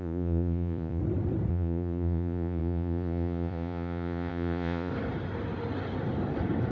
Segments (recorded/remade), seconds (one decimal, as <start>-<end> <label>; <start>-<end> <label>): 0.0-1.0 remade; 1.0-1.5 recorded; 1.5-4.9 remade; 4.9-6.7 recorded